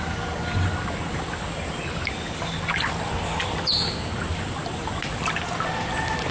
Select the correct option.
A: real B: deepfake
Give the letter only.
A